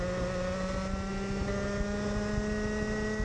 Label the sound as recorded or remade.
recorded